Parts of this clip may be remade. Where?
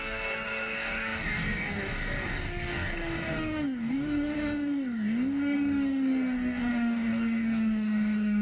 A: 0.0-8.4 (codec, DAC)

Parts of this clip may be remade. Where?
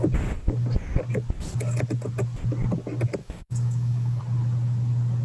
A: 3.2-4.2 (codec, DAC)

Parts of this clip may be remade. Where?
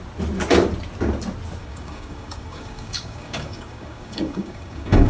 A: 1.6-5.1 (codec, DAC)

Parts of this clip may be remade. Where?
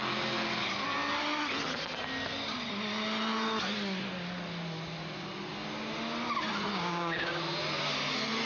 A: 6.7-7.4 (codec, DAC)